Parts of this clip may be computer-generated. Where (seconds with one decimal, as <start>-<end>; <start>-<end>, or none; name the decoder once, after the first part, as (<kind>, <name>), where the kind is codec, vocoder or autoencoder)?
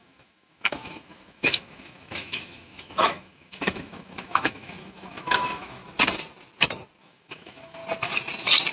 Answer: 0.0-5.8 (autoencoder, DAC-VAE); 7.0-7.8